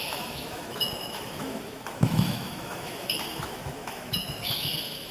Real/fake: fake